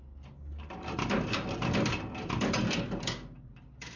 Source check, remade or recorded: recorded